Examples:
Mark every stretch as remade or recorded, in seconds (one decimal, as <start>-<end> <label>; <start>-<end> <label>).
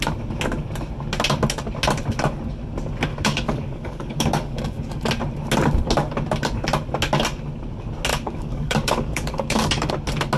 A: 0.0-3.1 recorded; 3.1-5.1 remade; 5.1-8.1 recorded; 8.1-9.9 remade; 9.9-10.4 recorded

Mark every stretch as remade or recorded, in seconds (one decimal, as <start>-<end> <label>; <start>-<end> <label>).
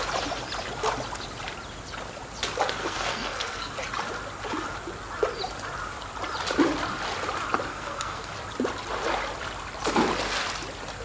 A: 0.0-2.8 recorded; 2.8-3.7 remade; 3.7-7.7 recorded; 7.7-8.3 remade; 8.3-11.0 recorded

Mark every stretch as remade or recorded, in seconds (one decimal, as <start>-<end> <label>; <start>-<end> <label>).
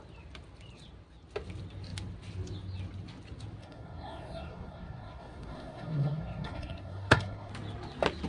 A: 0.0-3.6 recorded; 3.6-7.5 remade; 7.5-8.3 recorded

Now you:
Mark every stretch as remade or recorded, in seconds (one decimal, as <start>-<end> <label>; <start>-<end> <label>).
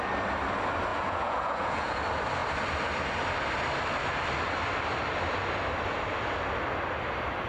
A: 0.0-0.9 recorded; 0.9-2.0 remade; 2.0-7.5 recorded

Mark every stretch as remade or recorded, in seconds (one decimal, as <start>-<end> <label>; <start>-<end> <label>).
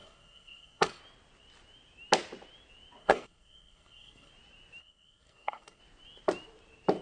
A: 0.0-1.0 remade; 1.0-3.0 recorded; 3.0-4.3 remade; 4.3-4.8 recorded; 4.8-5.8 remade; 5.8-7.0 recorded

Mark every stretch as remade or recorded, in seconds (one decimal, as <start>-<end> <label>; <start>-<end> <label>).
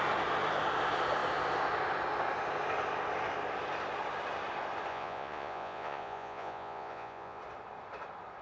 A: 0.0-4.9 recorded; 4.9-7.4 remade; 7.4-8.4 recorded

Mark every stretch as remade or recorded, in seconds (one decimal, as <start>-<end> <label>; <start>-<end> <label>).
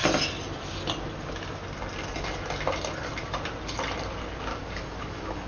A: 0.0-4.5 recorded; 4.5-5.5 remade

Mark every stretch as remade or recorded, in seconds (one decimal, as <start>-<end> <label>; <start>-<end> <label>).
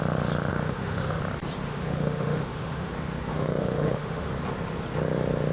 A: 0.0-0.5 recorded; 0.5-1.2 remade; 1.2-1.7 recorded; 1.7-2.9 remade; 2.9-3.3 recorded; 3.3-4.3 remade; 4.3-5.5 recorded